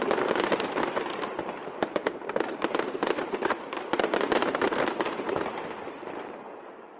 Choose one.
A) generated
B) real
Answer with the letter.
A